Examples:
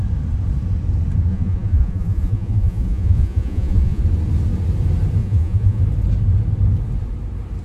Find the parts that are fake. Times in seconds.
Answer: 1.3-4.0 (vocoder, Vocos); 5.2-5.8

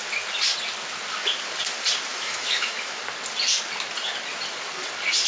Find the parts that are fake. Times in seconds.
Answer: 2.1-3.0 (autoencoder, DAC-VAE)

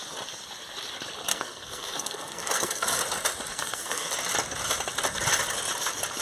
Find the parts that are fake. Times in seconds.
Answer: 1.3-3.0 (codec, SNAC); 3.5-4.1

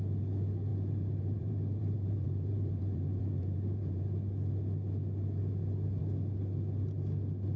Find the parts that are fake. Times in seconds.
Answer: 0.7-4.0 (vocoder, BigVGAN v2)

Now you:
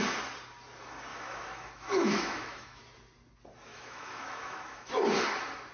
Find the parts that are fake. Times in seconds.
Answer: 1.1-2.8 (autoencoder, DAC-VAE); 3.7-4.9

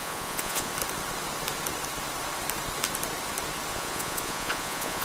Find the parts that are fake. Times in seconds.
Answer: 0.0-0.7 (vocoder, Vocos); 3.7-5.0

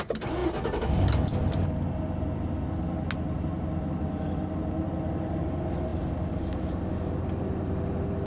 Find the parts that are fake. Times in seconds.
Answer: 5.9-6.4 (vocoder, BigVGAN v2)